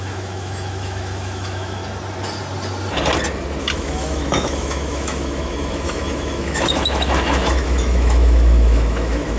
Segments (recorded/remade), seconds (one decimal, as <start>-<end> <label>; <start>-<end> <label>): 0.0-1.8 remade; 1.8-3.6 recorded; 3.6-9.4 remade